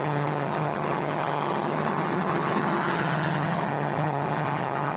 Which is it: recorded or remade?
remade